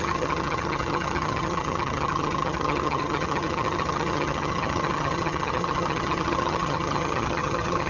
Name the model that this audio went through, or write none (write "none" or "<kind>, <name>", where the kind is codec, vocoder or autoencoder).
vocoder, HiFi-GAN